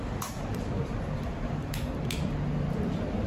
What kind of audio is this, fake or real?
fake